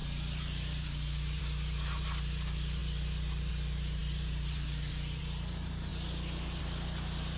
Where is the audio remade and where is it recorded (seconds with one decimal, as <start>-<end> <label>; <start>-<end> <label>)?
0.0-5.9 remade; 5.9-6.6 recorded; 6.6-7.4 remade